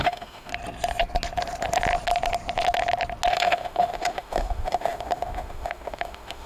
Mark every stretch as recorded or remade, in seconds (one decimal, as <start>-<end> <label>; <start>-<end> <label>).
0.0-0.5 remade; 0.5-3.3 recorded; 3.3-6.5 remade